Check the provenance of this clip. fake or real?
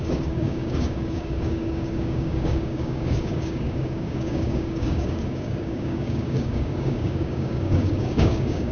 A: fake